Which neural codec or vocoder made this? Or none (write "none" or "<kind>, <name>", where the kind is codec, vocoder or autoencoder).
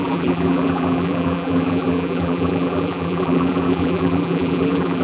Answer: vocoder, BigVGAN v2